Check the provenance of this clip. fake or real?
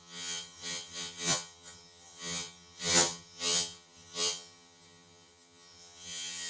fake